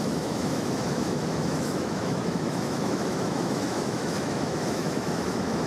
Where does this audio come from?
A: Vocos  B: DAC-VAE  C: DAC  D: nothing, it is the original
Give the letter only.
B